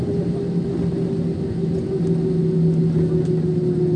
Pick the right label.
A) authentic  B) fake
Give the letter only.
A